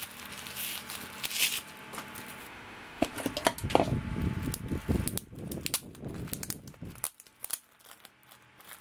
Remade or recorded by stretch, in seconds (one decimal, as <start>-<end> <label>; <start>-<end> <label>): 0.0-2.4 recorded; 2.4-3.1 remade; 3.1-8.8 recorded